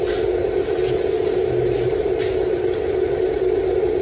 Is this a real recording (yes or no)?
yes